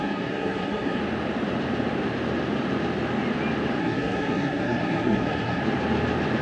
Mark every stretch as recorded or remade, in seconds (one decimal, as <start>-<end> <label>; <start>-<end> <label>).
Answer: 0.0-1.0 remade; 1.0-3.8 recorded; 3.8-5.6 remade; 5.6-6.4 recorded

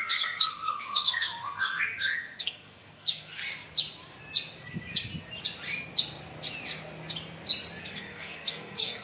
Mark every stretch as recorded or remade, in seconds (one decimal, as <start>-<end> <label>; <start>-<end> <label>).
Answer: 0.0-3.4 remade; 3.4-7.8 recorded; 7.8-9.0 remade

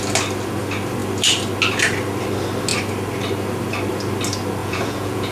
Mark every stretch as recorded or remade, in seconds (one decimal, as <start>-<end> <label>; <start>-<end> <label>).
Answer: 0.0-4.6 recorded; 4.6-5.3 remade

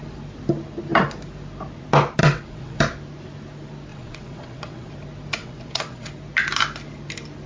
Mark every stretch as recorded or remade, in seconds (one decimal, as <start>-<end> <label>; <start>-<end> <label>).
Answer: 0.0-2.2 recorded; 2.2-2.8 remade; 2.8-3.9 recorded; 3.9-4.9 remade; 4.9-5.4 recorded; 5.4-6.1 remade; 6.1-7.5 recorded

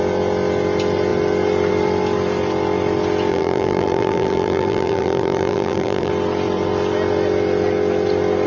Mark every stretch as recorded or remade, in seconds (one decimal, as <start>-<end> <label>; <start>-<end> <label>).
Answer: 0.0-3.3 recorded; 3.3-6.1 remade; 6.1-8.5 recorded

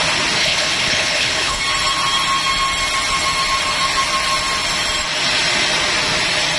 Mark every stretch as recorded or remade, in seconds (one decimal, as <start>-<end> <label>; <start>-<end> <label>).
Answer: 0.0-0.4 recorded; 0.4-1.6 remade; 1.6-6.6 recorded

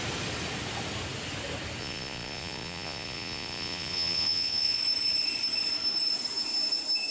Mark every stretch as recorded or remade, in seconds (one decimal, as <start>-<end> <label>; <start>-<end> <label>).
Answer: 0.0-1.8 recorded; 1.8-4.8 remade; 4.8-7.1 recorded